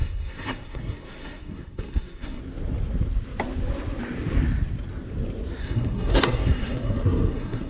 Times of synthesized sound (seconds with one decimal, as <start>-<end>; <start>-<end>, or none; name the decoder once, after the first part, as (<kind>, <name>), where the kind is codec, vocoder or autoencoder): 0.0-2.4 (codec, SNAC); 5.6-7.7